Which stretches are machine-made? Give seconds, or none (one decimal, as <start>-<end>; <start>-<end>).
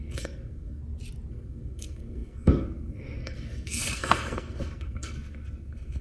0.0-0.8; 1.3-6.0